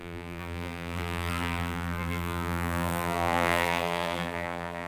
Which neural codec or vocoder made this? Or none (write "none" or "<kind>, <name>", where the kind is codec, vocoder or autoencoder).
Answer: vocoder, BigVGAN v2